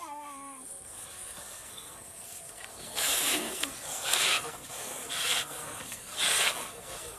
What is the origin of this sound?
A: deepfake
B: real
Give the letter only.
A